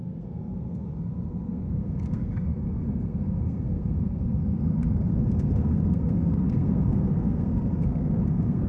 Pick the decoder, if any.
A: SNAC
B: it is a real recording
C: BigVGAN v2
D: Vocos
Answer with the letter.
A